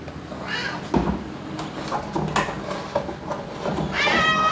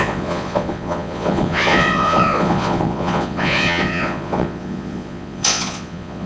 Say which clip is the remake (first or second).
second